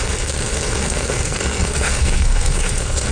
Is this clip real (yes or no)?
no